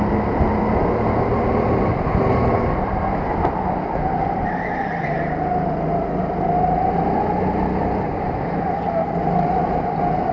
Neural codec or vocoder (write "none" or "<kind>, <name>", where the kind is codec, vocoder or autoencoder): none